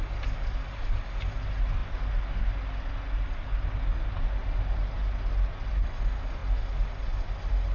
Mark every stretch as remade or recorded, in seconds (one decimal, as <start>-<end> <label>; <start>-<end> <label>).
0.0-7.7 recorded